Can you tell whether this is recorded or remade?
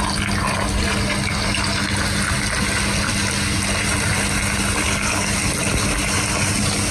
recorded